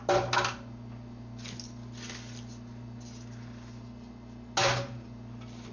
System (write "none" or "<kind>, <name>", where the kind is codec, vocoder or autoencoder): none